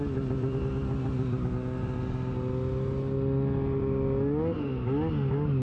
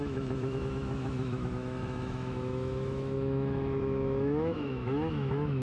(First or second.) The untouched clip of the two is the first